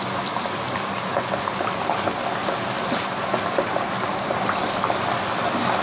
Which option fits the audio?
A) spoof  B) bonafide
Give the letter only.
B